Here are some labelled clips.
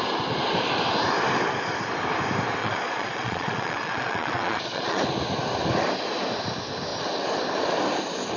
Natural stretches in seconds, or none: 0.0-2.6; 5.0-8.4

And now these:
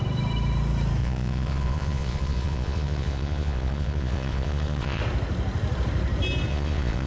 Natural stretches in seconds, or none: 0.0-1.0; 5.0-6.5

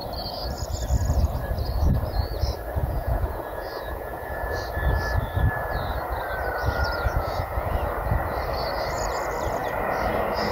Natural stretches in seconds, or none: 0.0-2.8; 4.7-6.6; 7.7-10.5

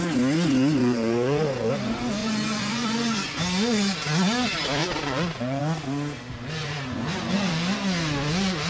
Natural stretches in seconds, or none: 0.0-0.8; 1.7-2.2; 3.4-4.8; 5.6-6.6; 7.5-8.7